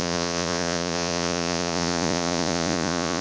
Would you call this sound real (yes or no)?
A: no